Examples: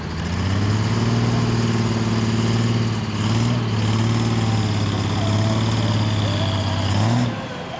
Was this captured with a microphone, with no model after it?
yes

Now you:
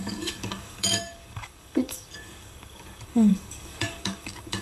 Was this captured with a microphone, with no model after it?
no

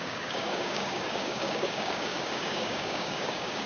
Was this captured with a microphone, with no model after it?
no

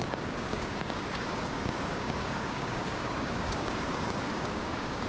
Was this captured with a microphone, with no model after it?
no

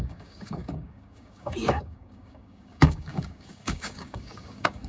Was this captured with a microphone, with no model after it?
no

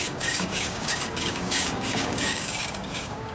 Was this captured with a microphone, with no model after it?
no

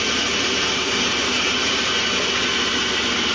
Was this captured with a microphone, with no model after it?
yes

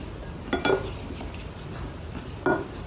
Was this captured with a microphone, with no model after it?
yes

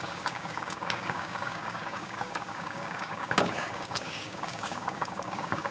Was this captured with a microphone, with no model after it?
no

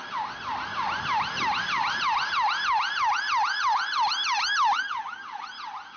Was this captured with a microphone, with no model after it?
yes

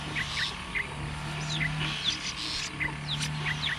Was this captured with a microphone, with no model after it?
yes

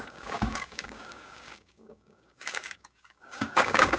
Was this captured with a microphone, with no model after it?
no